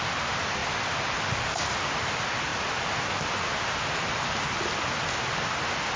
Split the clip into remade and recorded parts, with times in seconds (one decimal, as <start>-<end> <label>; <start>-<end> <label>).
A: 0.0-6.0 recorded